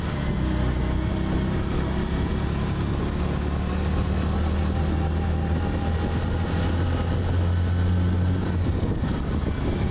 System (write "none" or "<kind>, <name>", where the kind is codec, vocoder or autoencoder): none